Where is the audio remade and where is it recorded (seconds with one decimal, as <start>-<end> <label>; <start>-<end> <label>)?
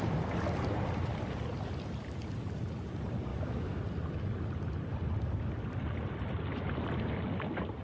0.0-3.3 recorded; 3.3-3.8 remade; 3.8-7.8 recorded